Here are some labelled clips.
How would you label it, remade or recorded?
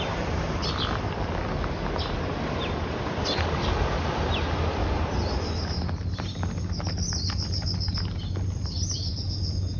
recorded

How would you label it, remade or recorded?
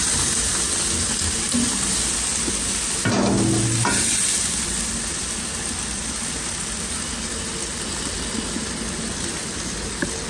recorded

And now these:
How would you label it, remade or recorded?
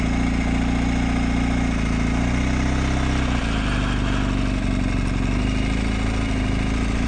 recorded